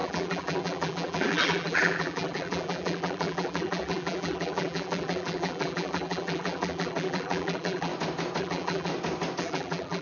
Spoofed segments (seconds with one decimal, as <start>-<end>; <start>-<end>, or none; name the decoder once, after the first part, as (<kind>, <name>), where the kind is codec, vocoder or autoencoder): 0.0-7.9 (vocoder, BigVGAN v2); 8.4-8.9; 9.4-10.0